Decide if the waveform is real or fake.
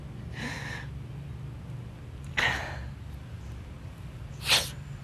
real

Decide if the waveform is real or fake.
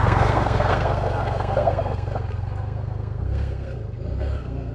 fake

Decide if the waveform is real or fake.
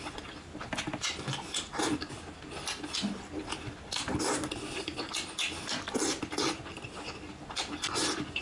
real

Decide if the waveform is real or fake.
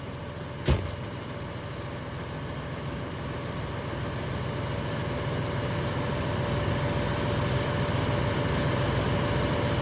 real